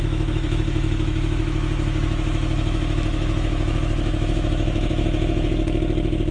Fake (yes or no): yes